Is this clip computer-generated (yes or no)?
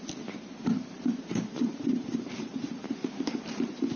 yes